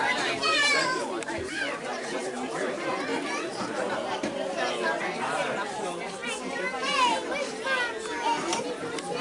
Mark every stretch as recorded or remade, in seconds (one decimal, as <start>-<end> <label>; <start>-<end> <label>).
0.0-3.1 remade; 3.1-5.0 recorded; 5.0-6.2 remade; 6.2-8.6 recorded; 8.6-9.2 remade